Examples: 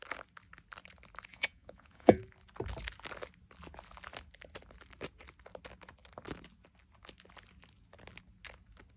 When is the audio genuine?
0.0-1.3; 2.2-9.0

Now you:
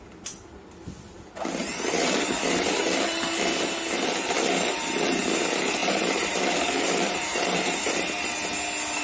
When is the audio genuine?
0.0-1.6; 2.8-5.8; 8.0-9.0